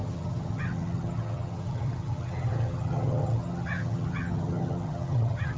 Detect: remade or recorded remade